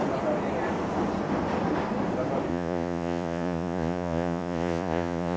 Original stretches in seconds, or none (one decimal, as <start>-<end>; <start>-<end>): 0.0-2.5